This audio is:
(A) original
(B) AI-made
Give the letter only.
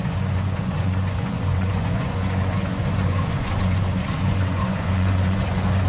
B